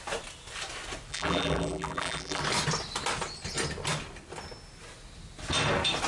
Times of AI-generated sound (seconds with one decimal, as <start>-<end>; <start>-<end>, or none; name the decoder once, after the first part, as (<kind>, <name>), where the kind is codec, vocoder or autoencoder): 1.1-2.4 (vocoder, BigVGAN v2)